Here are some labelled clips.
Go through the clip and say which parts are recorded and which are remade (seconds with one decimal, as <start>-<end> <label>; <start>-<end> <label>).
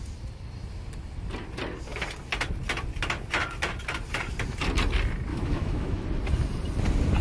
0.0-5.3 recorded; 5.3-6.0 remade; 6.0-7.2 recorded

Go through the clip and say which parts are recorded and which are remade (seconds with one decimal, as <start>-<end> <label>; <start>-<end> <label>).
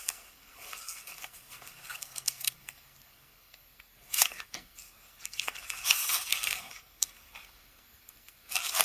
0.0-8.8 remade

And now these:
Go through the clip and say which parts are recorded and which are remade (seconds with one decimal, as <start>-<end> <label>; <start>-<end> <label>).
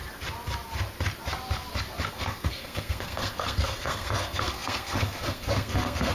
0.0-2.1 recorded; 2.1-6.1 remade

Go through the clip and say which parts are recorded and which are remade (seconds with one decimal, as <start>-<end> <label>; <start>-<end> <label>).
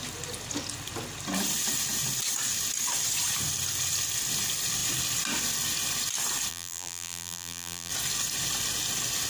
0.0-6.5 recorded; 6.5-7.9 remade; 7.9-9.3 recorded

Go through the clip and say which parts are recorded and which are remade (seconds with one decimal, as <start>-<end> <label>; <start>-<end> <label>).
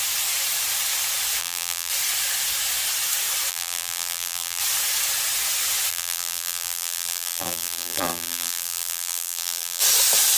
0.0-1.4 recorded; 1.4-1.9 remade; 1.9-3.5 recorded; 3.5-4.6 remade; 4.6-5.9 recorded; 5.9-9.8 remade; 9.8-10.4 recorded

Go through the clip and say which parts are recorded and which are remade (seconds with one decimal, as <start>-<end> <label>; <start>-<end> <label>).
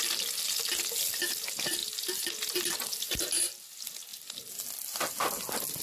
0.0-5.8 recorded